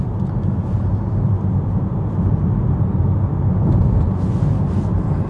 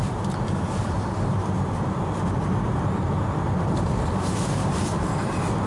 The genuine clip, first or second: first